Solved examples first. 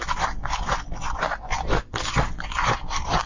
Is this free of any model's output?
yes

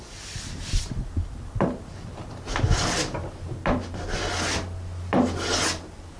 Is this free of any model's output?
yes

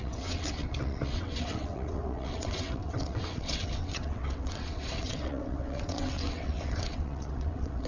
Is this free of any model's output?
no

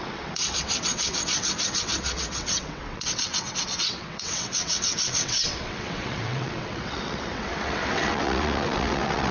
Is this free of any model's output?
no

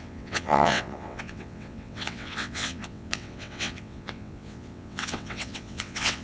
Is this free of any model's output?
no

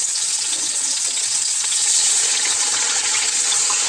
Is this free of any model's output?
no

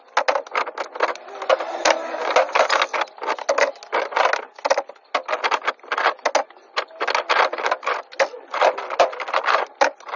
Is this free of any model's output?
yes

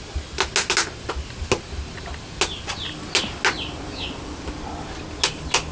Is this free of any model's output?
yes